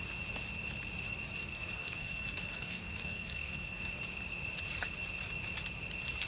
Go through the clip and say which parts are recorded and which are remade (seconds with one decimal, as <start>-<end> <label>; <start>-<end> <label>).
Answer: 0.0-1.4 recorded; 1.4-4.0 remade; 4.0-6.3 recorded